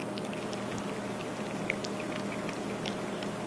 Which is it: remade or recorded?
recorded